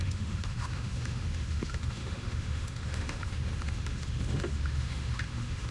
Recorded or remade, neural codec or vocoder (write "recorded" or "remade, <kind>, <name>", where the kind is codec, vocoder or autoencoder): remade, autoencoder, DAC-VAE